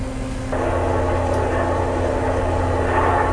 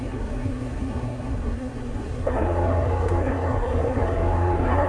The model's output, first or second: second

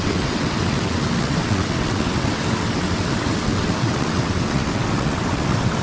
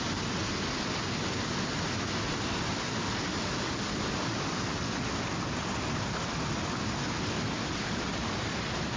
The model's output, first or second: first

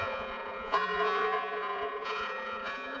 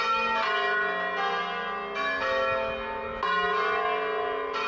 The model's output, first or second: first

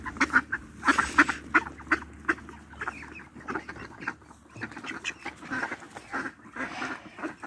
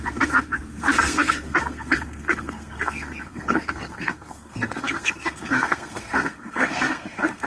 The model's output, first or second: second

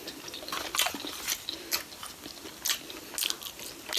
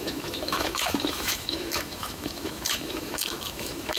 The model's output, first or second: second